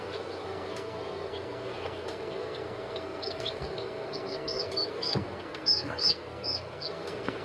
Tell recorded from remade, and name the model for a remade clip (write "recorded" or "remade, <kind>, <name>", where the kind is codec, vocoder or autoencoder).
remade, codec, SNAC